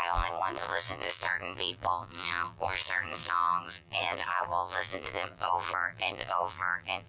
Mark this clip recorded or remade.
remade